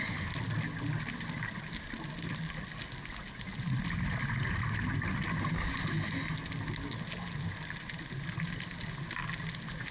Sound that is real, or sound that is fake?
real